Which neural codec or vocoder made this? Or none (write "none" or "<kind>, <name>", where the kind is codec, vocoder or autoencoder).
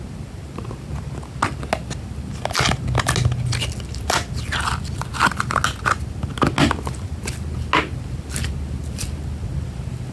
none